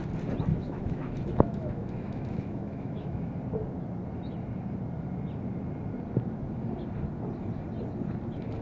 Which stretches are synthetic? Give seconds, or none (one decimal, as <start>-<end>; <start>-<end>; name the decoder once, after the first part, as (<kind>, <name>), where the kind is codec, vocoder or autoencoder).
0.5-3.3 (autoencoder, DAC-VAE)